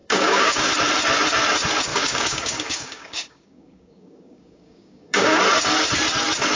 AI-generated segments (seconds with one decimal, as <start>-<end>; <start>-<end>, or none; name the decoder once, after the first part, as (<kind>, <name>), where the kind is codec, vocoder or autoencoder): 0.0-0.7 (codec, DAC); 1.9-5.4